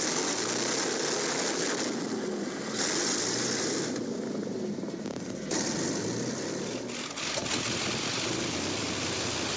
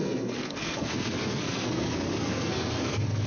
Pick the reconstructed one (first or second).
second